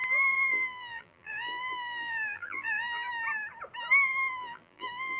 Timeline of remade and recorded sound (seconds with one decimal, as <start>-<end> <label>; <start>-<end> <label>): 0.0-3.1 remade; 3.1-4.4 recorded; 4.4-5.2 remade